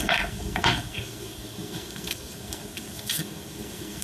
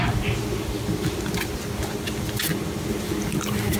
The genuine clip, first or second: second